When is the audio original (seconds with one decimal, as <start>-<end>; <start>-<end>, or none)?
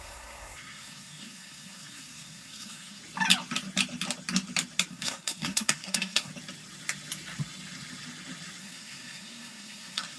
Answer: 3.0-4.9; 6.3-8.6